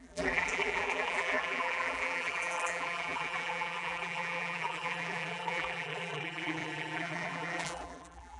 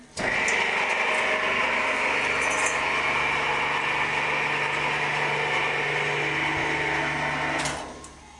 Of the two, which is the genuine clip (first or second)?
second